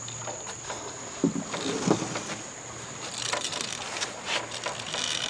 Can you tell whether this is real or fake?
real